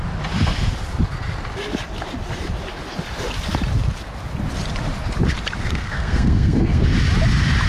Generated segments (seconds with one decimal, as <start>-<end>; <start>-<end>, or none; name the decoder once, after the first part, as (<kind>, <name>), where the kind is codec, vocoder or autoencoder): 5.6-6.8 (codec, SNAC)